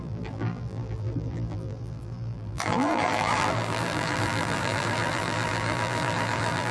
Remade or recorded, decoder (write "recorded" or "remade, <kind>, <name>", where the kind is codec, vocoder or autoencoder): remade, vocoder, BigVGAN v2